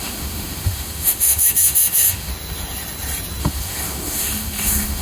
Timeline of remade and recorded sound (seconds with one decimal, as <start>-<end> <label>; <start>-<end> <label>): 0.0-2.3 remade; 2.3-3.4 recorded; 3.4-5.0 remade